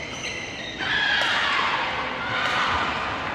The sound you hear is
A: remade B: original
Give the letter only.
B